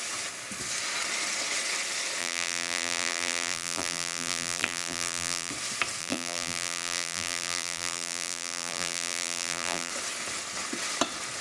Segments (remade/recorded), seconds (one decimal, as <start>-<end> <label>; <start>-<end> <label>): 0.0-2.2 recorded; 2.2-5.5 remade; 5.5-6.0 recorded; 6.0-9.9 remade; 9.9-11.4 recorded